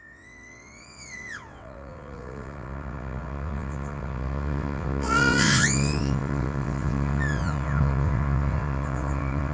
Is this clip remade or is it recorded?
remade